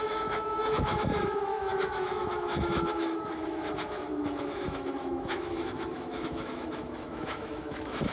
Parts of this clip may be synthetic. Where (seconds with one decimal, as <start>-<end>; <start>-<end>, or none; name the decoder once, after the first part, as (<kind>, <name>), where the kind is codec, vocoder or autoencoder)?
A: 0.0-8.1 (autoencoder, DAC-VAE)